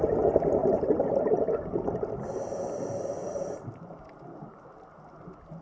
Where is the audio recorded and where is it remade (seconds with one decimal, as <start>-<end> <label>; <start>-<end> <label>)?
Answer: 0.0-0.6 recorded; 0.6-2.1 remade; 2.1-3.2 recorded; 3.2-4.0 remade; 4.0-5.6 recorded